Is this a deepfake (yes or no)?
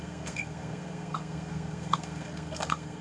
yes